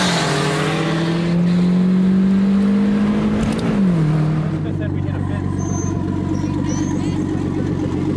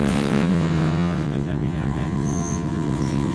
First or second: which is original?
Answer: first